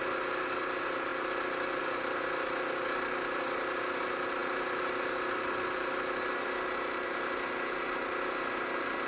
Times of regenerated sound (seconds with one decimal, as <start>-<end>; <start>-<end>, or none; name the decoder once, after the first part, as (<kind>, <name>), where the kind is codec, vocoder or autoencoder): none